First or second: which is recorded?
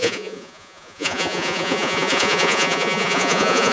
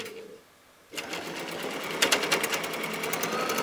second